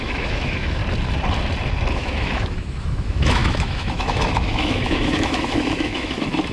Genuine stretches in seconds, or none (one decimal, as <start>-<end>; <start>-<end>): 0.8-1.9